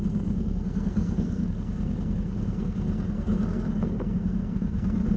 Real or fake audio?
fake